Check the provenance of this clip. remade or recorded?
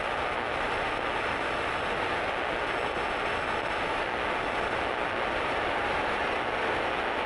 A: recorded